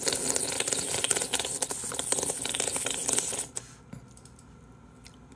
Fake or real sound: real